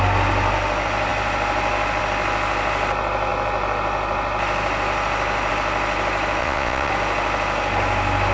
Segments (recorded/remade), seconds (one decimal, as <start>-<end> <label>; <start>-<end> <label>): 0.0-6.4 recorded; 6.4-6.9 remade; 6.9-8.3 recorded